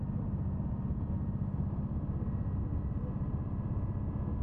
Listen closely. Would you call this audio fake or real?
real